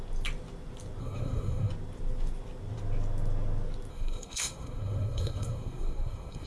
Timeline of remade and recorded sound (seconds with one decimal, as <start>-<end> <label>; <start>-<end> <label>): 0.0-1.0 recorded; 1.0-1.7 remade; 1.7-3.9 recorded; 3.9-6.5 remade